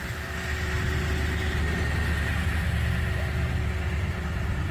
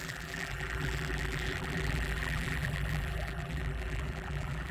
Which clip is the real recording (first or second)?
first